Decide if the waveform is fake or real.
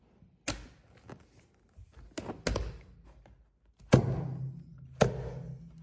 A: real